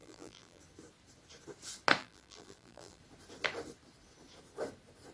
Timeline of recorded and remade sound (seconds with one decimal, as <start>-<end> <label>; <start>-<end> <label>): 0.0-0.6 remade; 0.6-2.0 recorded; 2.0-3.0 remade; 3.0-5.1 recorded